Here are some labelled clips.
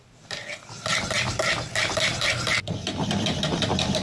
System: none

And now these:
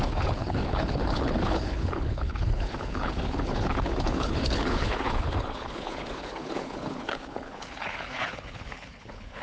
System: codec, HILCodec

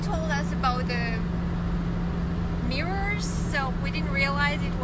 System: none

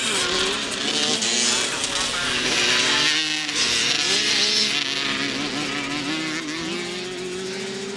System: none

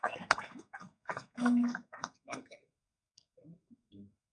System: codec, SNAC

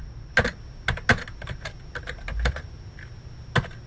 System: none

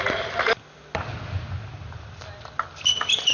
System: none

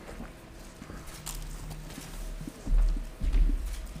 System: none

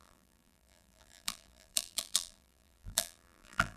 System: vocoder, BigVGAN v2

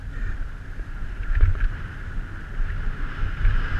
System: vocoder, BigVGAN v2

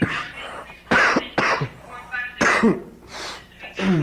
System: vocoder, BigVGAN v2